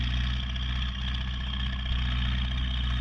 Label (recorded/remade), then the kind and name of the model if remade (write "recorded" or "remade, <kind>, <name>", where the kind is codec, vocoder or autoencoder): recorded